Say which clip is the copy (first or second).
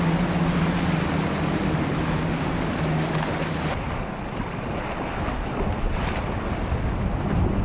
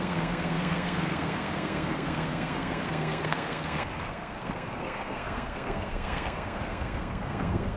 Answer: second